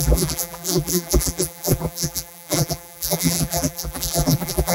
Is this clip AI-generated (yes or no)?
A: yes